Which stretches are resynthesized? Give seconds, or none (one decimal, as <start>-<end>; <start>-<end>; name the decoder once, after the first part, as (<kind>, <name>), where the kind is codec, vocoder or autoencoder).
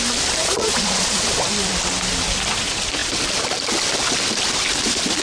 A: 0.4-1.4 (vocoder, Vocos)